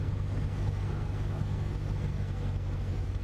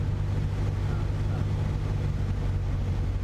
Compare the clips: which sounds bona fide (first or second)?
second